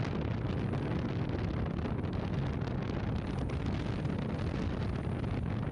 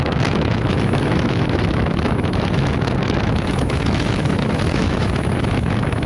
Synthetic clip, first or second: second